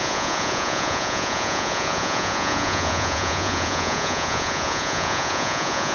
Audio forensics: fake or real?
fake